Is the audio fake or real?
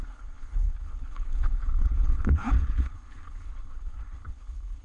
fake